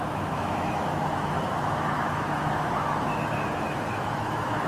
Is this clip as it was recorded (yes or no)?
no